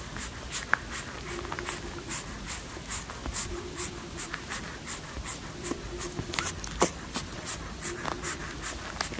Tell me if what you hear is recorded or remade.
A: recorded